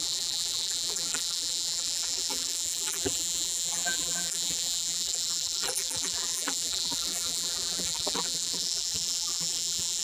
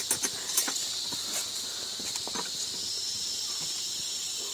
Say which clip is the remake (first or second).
first